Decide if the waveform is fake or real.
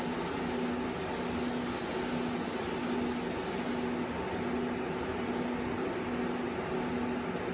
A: real